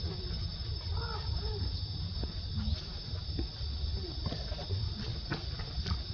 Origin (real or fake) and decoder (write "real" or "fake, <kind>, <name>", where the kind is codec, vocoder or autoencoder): real